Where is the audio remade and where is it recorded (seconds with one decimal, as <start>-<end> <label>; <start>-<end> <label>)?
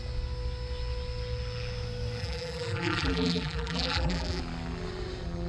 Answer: 0.0-2.2 recorded; 2.2-4.4 remade; 4.4-5.5 recorded